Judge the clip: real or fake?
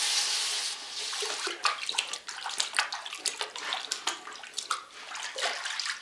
real